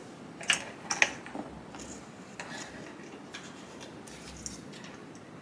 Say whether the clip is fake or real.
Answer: real